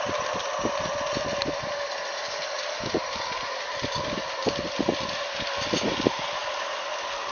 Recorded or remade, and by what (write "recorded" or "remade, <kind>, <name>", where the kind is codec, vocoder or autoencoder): recorded